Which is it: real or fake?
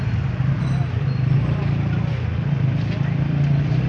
real